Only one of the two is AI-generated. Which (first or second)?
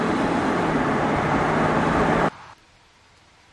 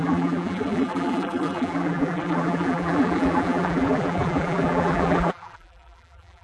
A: second